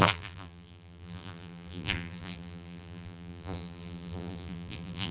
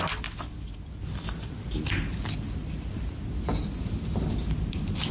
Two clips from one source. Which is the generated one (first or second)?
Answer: first